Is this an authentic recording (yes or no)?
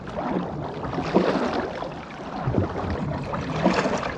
yes